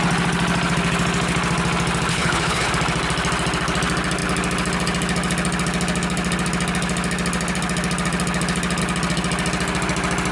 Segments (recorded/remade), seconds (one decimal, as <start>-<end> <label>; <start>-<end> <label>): 0.0-2.1 recorded; 2.1-2.7 remade; 2.7-10.3 recorded